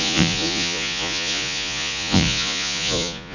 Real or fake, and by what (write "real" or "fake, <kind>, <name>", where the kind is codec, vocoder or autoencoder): fake, vocoder, Vocos